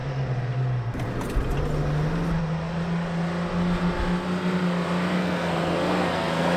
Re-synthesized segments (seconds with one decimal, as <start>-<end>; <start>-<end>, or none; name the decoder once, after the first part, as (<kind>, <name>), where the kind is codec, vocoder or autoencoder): 5.2-6.6 (codec, SNAC)